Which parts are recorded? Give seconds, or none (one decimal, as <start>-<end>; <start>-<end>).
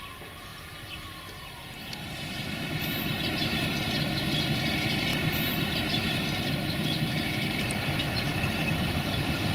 none